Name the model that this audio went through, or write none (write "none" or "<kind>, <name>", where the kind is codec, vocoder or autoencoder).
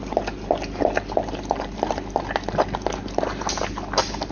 none